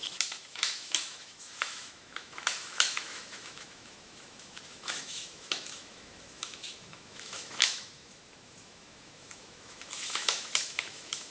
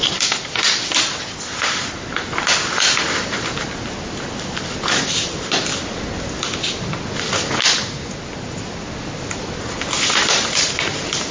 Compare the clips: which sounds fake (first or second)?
first